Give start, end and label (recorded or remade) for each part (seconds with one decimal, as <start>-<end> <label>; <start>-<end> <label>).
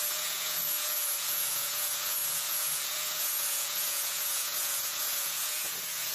0.0-6.1 remade